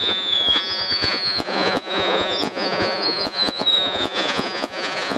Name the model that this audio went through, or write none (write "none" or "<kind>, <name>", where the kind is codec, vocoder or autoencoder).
vocoder, Vocos